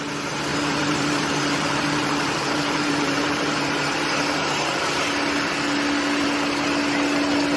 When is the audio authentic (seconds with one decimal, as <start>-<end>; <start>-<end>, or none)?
0.0-0.5; 5.1-7.6